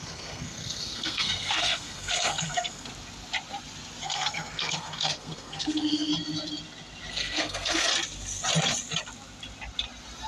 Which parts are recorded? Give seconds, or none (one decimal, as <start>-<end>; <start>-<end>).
2.9-4.0; 6.1-7.1; 7.9-10.3